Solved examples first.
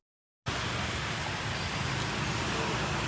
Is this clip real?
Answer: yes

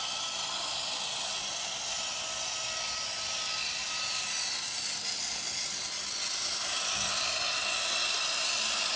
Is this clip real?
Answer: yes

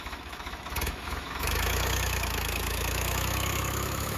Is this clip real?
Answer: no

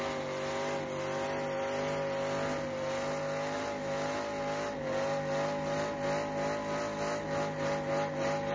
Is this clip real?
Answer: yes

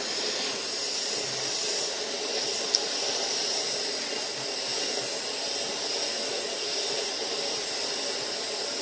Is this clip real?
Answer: yes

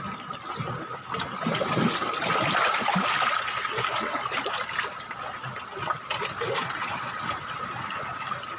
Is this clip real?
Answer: yes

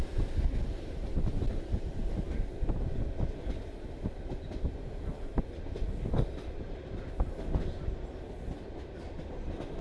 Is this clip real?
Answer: yes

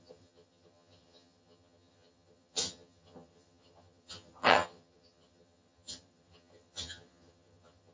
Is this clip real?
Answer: no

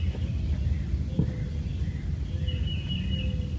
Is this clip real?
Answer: yes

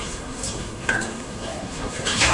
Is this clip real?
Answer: no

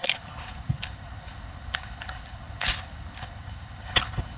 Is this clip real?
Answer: no